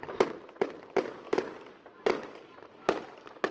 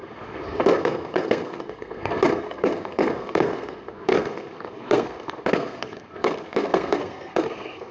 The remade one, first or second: second